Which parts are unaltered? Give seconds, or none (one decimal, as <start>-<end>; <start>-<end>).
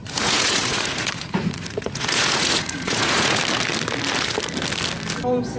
3.4-5.6